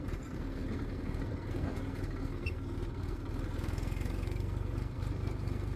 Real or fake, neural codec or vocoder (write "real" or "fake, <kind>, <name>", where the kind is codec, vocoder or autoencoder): fake, codec, SNAC